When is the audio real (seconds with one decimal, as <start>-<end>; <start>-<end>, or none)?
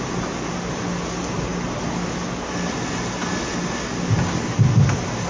0.0-5.3